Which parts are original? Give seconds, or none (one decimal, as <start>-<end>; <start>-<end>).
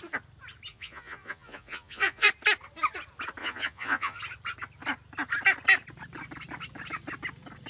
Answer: 0.0-0.7; 2.3-3.4; 4.2-7.7